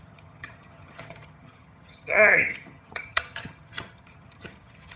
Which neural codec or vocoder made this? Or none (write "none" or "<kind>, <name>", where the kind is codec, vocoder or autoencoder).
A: vocoder, HiFi-GAN